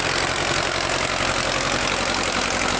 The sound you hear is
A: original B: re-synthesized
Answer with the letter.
A